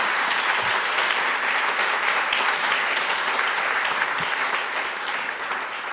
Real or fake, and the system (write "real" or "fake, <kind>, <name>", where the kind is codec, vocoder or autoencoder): real